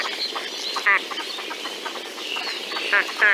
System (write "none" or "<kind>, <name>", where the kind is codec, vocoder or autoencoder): none